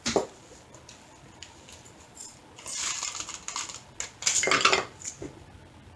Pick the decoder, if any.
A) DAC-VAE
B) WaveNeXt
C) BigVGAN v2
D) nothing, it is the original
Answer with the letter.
D